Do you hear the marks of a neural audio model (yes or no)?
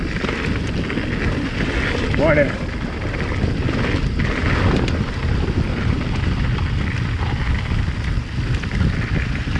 no